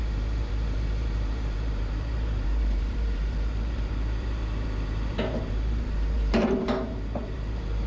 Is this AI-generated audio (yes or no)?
yes